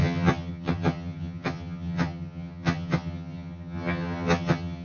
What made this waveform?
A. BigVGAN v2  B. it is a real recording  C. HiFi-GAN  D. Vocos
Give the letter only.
C